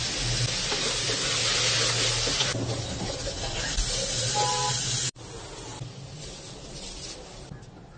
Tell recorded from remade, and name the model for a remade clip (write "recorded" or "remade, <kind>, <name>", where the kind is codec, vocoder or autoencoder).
recorded